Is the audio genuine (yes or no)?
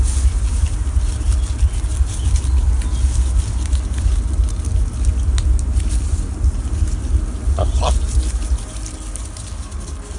yes